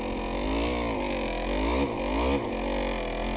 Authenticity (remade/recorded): recorded